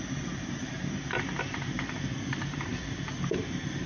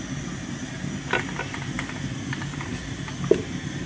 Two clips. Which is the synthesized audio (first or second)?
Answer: first